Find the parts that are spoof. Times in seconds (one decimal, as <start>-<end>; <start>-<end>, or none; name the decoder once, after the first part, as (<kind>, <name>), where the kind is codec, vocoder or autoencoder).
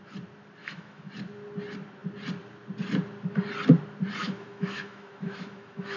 0.6-1.1 (autoencoder, DAC-VAE); 4.2-6.0